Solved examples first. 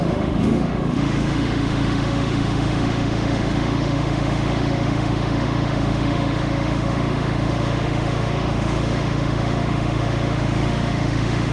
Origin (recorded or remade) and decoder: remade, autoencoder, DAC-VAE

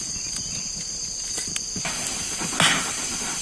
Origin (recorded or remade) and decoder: recorded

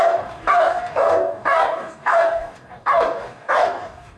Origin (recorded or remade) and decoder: remade, codec, DAC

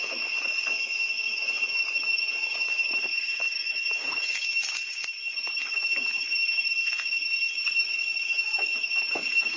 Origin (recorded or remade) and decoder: remade, autoencoder, DAC-VAE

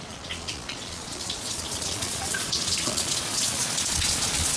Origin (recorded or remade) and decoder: remade, vocoder, Vocos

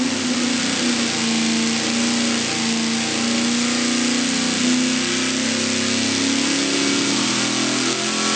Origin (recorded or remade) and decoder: recorded